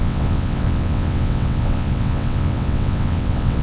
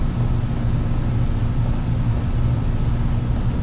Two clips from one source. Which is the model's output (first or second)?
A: first